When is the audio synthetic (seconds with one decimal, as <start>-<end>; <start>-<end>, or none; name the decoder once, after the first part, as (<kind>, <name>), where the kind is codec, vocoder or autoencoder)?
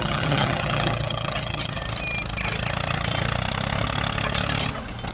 0.0-1.8 (vocoder, HiFi-GAN)